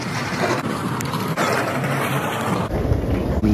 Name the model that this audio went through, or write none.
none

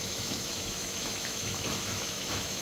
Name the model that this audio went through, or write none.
autoencoder, DAC-VAE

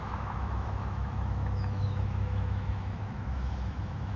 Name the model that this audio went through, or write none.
autoencoder, DAC-VAE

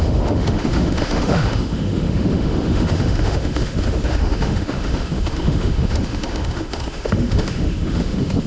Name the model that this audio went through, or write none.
autoencoder, DAC-VAE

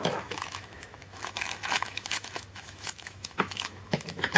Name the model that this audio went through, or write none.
autoencoder, DAC-VAE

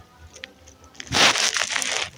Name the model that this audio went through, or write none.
none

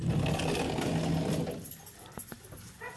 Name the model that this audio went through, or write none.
none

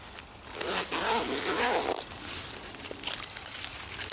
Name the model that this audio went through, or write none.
none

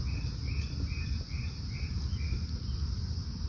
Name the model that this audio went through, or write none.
none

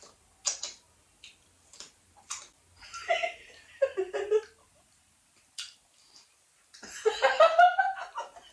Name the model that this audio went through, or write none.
none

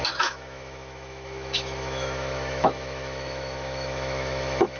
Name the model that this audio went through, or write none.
autoencoder, DAC-VAE